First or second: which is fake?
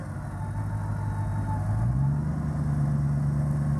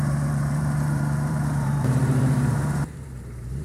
second